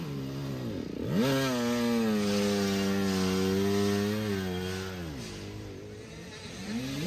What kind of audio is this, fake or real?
real